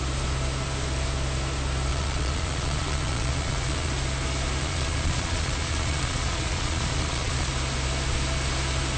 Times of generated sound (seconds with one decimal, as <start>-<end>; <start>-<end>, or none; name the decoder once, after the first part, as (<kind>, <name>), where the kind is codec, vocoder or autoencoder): 1.9-3.9 (vocoder, Vocos); 4.6-7.5